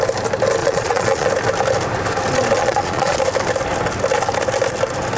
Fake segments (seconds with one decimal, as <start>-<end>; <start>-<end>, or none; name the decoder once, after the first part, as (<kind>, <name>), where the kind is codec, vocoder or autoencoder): 0.6-1.3 (vocoder, Vocos); 2.6-3.2